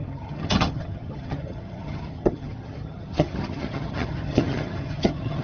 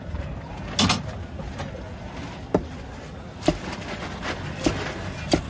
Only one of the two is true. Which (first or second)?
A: second